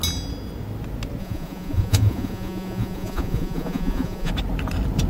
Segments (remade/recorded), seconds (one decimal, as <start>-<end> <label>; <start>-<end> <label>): 0.0-1.2 recorded; 1.2-4.3 remade; 4.3-5.1 recorded